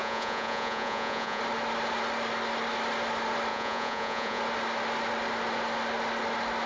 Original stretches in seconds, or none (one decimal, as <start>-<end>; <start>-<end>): 1.4-3.5; 4.4-6.7

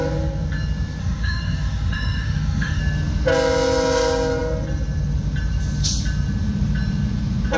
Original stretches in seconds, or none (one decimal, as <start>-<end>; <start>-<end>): 0.0-1.0; 2.8-7.6

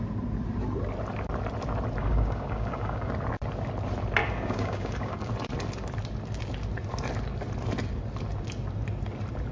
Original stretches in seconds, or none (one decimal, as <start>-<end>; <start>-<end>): 0.0-2.0; 3.1-4.2; 5.3-9.5

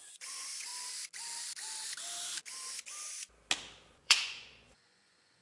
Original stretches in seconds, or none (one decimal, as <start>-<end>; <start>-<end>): 0.7-3.9

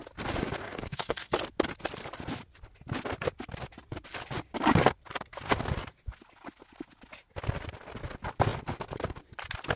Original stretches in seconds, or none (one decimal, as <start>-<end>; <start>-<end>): 0.0-0.6; 1.3-9.8

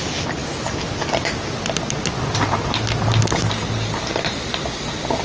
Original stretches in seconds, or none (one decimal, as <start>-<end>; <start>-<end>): 0.0-5.2

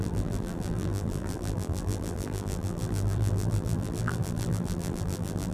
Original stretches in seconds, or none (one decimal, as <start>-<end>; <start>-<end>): none

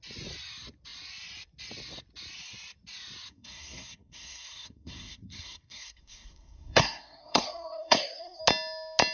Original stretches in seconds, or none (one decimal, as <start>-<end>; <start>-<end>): 0.0-3.3; 8.4-9.1